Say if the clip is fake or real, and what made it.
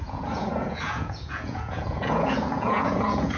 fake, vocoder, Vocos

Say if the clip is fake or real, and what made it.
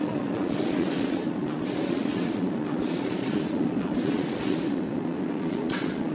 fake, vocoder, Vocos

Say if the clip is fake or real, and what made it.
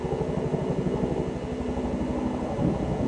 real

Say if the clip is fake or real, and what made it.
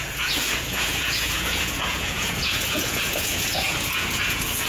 fake, vocoder, Vocos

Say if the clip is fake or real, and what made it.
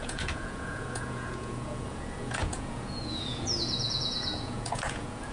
fake, vocoder, Vocos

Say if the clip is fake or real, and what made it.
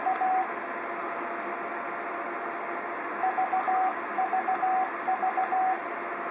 real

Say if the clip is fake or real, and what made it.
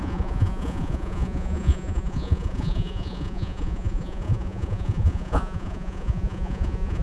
fake, vocoder, Vocos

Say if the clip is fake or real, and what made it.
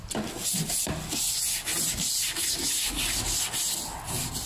real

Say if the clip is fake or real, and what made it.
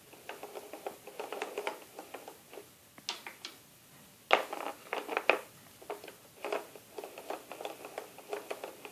real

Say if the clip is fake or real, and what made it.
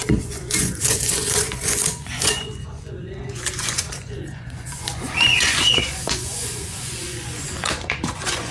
fake, vocoder, Vocos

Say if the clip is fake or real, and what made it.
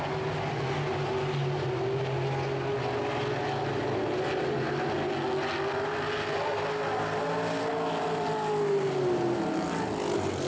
real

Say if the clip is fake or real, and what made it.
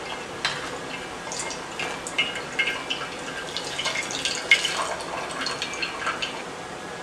real